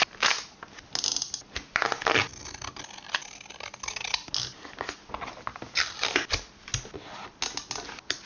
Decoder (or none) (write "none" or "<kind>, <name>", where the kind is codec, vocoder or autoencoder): none